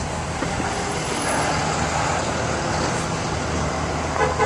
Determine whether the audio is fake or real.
real